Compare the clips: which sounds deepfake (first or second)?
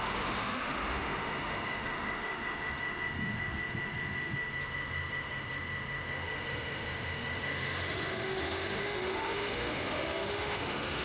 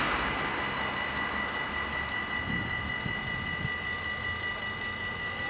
first